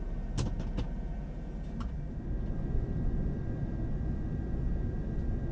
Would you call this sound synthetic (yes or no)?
no